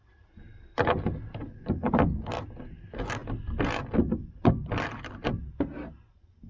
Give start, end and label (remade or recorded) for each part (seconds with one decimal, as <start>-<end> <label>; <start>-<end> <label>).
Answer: 0.0-6.5 recorded